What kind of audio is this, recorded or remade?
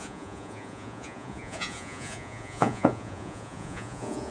remade